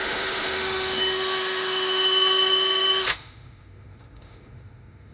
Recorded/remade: remade